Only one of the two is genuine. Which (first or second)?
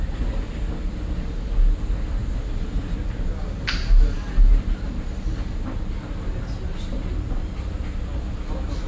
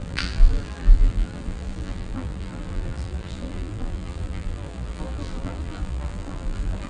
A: first